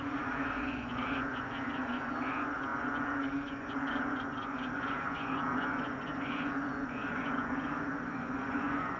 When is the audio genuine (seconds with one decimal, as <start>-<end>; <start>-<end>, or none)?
none